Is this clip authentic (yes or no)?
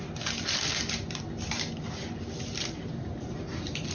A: yes